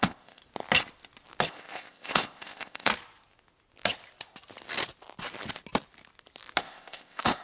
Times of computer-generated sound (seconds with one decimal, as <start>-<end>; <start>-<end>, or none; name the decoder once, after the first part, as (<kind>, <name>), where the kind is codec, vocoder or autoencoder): 0.0-0.4 (codec, ZipCodec); 1.5-2.9; 6.6-7.4